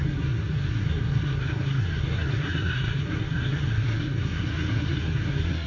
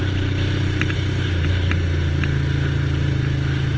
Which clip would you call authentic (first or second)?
second